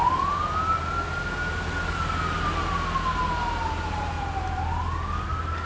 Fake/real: real